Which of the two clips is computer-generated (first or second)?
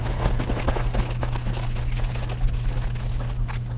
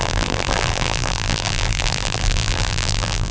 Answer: second